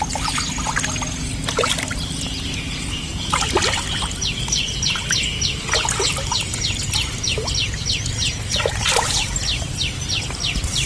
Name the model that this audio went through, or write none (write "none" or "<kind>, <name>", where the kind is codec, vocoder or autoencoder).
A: none